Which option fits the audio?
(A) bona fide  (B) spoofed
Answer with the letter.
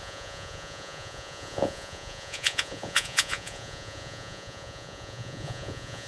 B